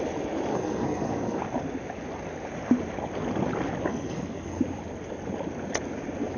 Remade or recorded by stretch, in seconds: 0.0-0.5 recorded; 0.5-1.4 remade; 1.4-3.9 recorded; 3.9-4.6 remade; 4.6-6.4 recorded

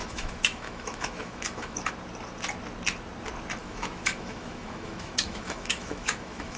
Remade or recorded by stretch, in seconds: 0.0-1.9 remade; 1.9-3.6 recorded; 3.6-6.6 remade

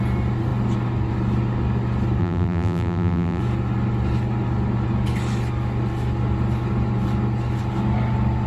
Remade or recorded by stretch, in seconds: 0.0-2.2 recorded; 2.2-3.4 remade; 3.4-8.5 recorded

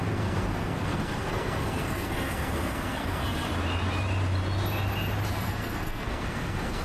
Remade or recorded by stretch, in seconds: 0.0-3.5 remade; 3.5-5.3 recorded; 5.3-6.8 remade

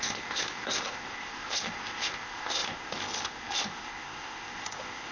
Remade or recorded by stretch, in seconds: 0.0-5.1 remade